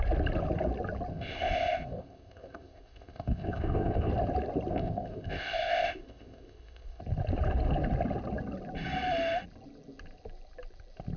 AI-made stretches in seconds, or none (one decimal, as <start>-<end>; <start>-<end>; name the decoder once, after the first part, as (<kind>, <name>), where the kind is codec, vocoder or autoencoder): 1.1-4.1 (codec, ZipCodec); 4.7-7.0